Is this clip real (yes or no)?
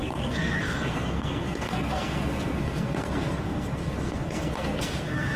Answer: no